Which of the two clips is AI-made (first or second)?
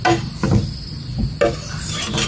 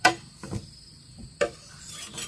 second